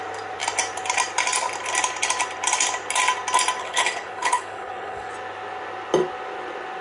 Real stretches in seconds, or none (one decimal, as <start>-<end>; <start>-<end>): 0.0-3.6; 5.1-6.8